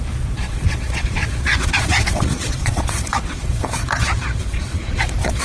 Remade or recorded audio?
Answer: remade